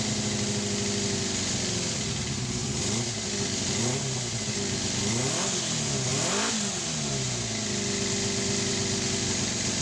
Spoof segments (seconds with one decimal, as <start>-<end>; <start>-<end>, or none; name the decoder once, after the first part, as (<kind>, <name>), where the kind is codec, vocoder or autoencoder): 2.6-3.8 (vocoder, BigVGAN v2)